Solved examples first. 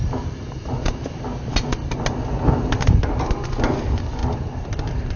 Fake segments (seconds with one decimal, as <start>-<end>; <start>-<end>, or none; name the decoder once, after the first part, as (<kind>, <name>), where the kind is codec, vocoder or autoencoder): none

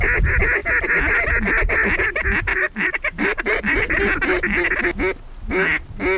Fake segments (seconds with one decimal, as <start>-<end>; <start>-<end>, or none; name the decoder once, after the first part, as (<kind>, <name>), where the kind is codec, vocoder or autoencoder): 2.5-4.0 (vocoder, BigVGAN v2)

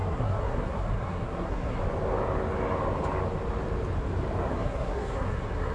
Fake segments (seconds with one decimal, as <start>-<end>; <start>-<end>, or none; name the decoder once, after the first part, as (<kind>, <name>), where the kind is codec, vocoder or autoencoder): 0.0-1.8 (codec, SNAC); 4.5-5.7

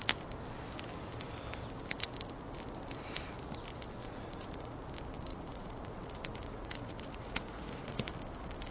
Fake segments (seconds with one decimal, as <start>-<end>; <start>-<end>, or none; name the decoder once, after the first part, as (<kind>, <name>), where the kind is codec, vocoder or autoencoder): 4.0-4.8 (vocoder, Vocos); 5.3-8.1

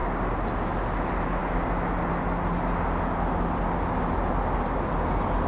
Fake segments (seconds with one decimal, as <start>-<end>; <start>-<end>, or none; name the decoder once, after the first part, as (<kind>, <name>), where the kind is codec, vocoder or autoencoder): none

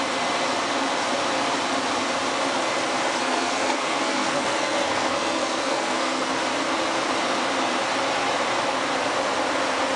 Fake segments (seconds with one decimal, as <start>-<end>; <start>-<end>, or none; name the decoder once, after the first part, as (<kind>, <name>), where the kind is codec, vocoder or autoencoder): 3.2-6.3 (codec, SNAC)